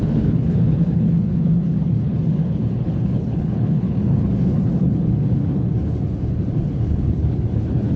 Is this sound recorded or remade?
remade